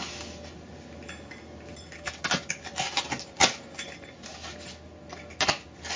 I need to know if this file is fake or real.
real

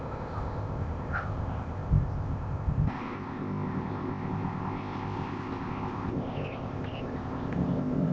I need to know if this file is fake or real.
fake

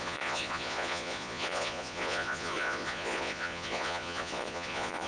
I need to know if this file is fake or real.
fake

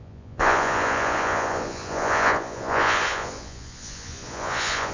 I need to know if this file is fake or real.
fake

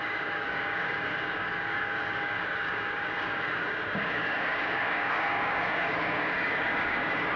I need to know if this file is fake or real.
fake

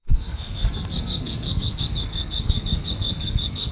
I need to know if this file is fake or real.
fake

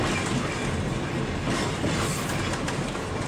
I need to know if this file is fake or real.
real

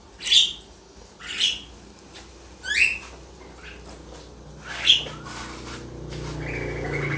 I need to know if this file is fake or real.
real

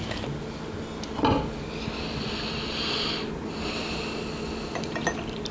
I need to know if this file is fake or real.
real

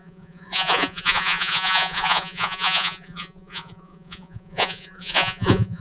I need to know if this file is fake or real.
fake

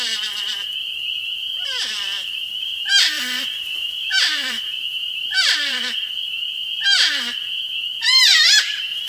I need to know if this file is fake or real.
fake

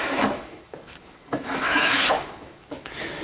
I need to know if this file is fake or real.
fake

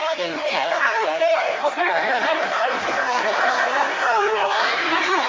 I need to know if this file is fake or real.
fake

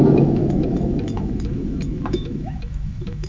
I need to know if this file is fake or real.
fake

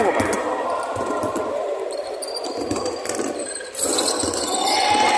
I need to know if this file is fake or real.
fake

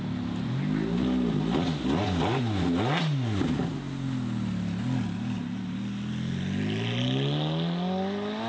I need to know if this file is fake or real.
real